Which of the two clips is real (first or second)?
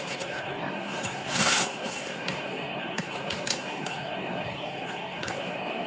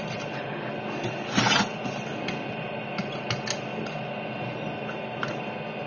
second